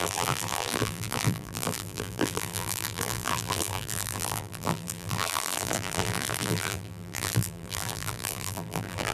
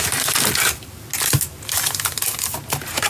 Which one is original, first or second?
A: second